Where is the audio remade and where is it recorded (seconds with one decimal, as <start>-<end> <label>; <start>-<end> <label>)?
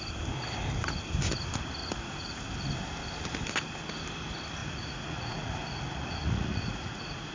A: 0.0-1.8 recorded; 1.8-2.4 remade; 2.4-4.6 recorded; 4.6-7.3 remade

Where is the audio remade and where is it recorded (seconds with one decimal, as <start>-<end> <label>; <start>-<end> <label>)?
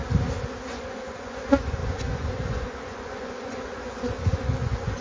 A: 0.0-0.7 recorded; 0.7-5.0 remade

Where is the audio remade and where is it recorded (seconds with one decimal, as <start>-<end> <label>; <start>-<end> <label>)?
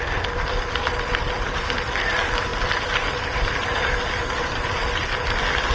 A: 0.0-5.7 recorded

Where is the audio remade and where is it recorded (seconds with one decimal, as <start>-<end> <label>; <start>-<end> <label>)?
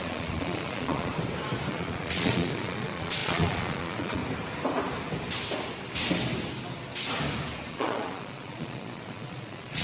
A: 0.0-1.1 remade; 1.1-1.7 recorded; 1.7-4.2 remade; 4.2-7.7 recorded; 7.7-9.8 remade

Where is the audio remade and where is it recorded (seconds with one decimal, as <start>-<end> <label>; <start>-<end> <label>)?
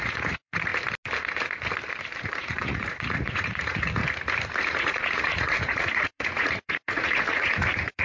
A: 0.0-0.7 remade; 0.7-2.2 recorded; 2.2-4.0 remade; 4.0-4.6 recorded; 4.6-8.0 remade